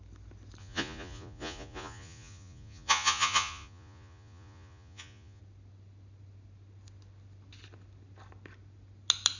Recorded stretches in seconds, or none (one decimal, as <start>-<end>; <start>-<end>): 0.0-0.6; 5.4-9.4